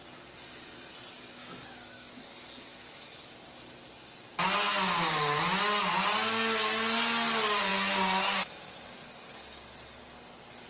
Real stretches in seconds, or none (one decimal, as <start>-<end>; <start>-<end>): 0.0-1.4; 2.1-10.7